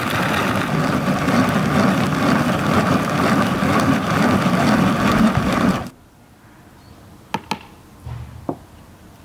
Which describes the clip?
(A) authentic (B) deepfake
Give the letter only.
A